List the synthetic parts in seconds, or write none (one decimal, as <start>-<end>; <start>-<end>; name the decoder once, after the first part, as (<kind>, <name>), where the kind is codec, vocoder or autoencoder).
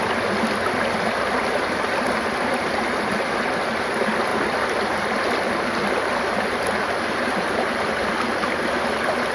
none